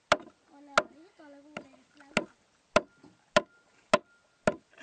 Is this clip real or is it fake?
real